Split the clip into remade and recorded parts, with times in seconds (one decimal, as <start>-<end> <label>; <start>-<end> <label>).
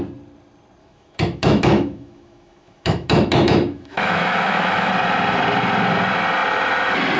0.0-0.8 recorded; 0.8-4.9 remade; 4.9-7.2 recorded